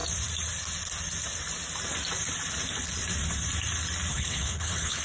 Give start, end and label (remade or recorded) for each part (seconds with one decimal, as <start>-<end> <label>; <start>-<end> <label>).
0.0-4.1 recorded; 4.1-5.0 remade